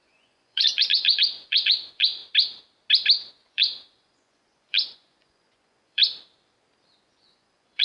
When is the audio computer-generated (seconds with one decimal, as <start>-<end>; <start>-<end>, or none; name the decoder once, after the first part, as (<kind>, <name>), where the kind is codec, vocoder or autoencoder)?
0.0-2.2 (vocoder, Vocos); 3.3-6.0; 6.9-7.8